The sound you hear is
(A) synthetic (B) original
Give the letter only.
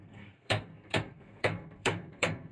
A